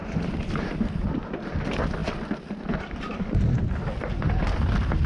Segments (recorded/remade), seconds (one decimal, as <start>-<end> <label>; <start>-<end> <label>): 0.0-0.8 remade; 0.8-5.1 recorded